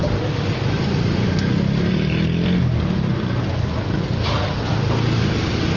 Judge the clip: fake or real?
real